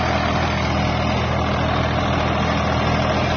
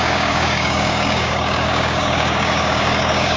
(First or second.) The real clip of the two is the first